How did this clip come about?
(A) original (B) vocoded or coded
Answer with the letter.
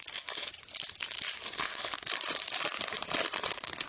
A